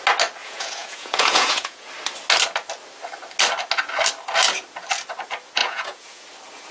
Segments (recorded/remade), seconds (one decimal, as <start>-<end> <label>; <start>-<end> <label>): 0.0-0.4 recorded; 0.4-1.9 remade; 1.9-5.6 recorded; 5.6-6.2 remade; 6.2-6.7 recorded